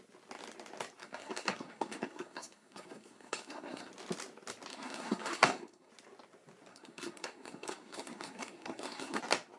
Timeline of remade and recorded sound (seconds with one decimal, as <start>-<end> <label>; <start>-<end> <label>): 0.0-1.0 recorded; 1.0-3.9 remade; 3.9-4.7 recorded; 4.7-5.9 remade; 5.9-6.7 recorded; 6.7-9.2 remade; 9.2-9.6 recorded